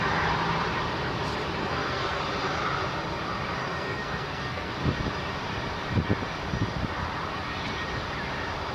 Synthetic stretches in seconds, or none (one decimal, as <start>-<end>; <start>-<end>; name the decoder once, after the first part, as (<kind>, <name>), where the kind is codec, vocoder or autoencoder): 1.6-2.2 (codec, SNAC); 3.6-4.7